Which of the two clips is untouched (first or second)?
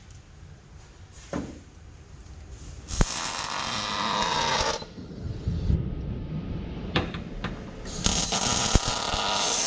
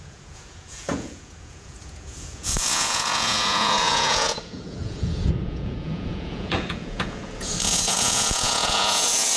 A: first